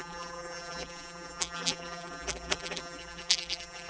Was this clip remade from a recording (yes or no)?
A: yes